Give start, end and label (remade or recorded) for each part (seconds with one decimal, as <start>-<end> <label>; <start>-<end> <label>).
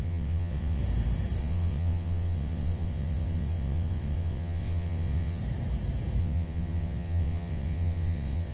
0.0-0.8 remade; 0.8-1.4 recorded; 1.4-5.4 remade; 5.4-6.2 recorded; 6.2-8.5 remade